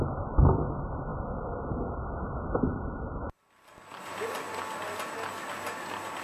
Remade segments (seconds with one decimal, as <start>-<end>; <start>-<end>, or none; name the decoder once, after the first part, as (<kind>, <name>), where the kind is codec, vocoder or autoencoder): none